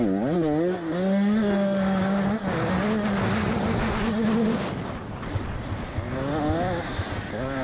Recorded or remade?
recorded